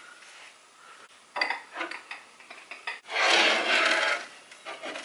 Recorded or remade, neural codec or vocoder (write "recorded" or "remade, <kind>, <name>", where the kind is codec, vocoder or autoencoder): recorded